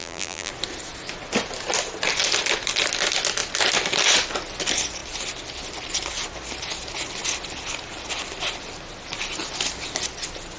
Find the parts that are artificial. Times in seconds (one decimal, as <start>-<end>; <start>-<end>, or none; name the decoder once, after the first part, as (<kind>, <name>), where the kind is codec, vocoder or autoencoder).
0.0-0.5 (vocoder, BigVGAN v2)

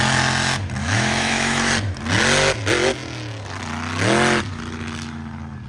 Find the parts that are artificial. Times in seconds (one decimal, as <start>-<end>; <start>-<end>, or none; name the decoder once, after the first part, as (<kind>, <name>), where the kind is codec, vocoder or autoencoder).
0.8-1.7 (autoencoder, DAC-VAE)

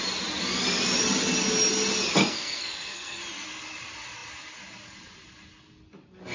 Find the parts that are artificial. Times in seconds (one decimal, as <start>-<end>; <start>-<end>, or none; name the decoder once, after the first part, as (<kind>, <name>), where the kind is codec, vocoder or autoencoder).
2.2-3.2 (codec, SNAC)

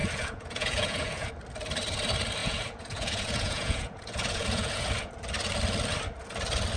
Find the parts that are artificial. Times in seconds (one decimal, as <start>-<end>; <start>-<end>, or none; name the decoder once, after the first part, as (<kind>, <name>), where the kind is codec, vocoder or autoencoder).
0.0-1.3 (vocoder, Vocos); 2.4-5.1

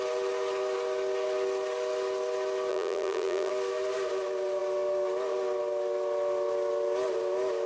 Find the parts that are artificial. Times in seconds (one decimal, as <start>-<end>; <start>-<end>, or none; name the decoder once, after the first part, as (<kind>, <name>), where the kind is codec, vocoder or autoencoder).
2.7-3.5 (vocoder, BigVGAN v2)

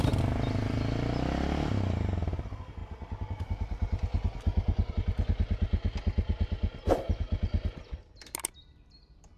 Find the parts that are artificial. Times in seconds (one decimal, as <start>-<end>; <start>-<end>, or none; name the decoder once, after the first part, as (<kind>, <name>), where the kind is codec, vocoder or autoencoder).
none

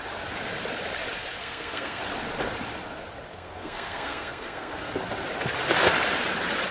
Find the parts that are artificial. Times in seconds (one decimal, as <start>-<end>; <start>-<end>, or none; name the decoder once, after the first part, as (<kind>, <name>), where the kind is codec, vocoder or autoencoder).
1.4-2.0 (codec, SNAC); 3.3-4.9